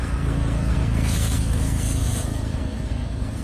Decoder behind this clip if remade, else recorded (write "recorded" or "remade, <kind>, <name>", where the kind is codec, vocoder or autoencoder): remade, codec, SNAC